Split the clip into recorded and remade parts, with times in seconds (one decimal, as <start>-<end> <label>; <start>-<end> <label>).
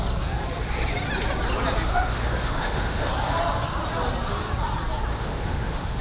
0.0-1.9 recorded; 1.9-3.1 remade; 3.1-5.1 recorded; 5.1-6.0 remade